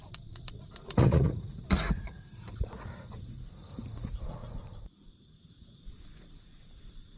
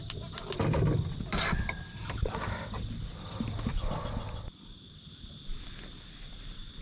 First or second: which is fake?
first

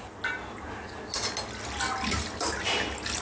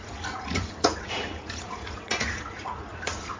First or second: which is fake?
second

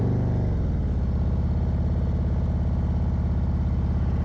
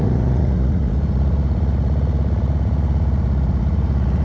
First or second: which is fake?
second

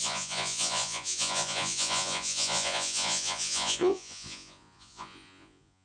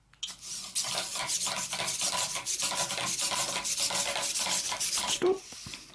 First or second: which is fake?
first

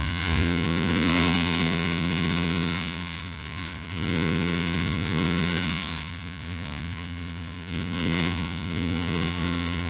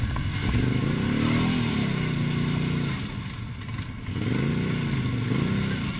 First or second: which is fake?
first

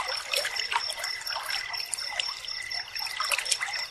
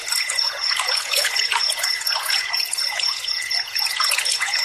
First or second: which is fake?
second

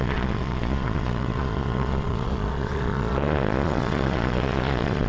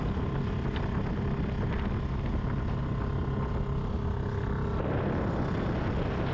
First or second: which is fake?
first